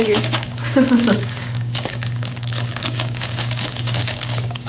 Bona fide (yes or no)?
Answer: no